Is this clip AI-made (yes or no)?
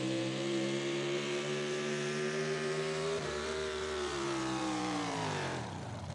yes